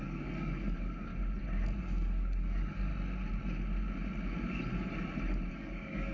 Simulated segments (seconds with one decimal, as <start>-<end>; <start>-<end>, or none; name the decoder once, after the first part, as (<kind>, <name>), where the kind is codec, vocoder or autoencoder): 0.0-1.1 (codec, DAC); 1.8-2.9; 5.5-6.1